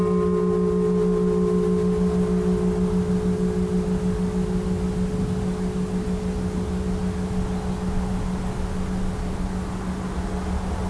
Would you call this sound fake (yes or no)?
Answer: no